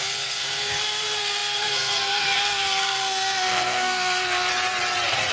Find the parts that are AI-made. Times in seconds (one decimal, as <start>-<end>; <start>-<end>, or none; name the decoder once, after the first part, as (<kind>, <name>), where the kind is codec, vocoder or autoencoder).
0.0-4.5 (codec, SNAC)